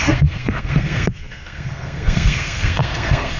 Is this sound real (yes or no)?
no